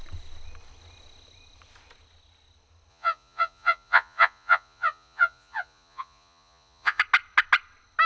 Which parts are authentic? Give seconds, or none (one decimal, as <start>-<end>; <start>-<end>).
0.0-2.9; 7.0-8.1